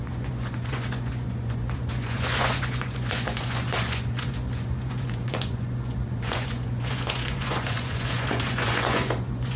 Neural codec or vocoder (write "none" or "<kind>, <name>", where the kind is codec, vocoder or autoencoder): vocoder, Vocos